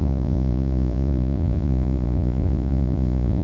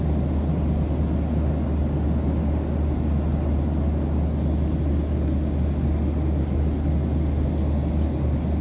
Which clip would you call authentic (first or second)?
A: second